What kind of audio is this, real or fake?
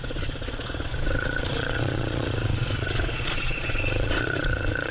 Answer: fake